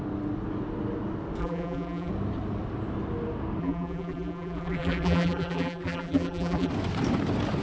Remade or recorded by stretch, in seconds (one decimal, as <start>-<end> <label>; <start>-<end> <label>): 0.0-1.4 recorded; 1.4-2.1 remade; 2.1-3.6 recorded; 3.6-6.7 remade; 6.7-7.6 recorded